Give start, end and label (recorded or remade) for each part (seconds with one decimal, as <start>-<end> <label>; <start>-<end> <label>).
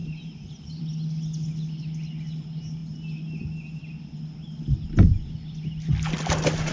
0.0-0.8 remade; 0.8-6.7 recorded